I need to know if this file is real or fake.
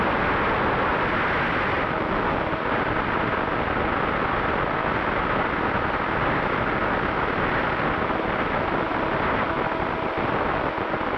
real